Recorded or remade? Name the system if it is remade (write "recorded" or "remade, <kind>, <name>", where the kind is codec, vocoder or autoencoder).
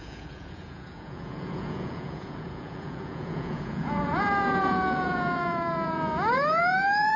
remade, vocoder, Vocos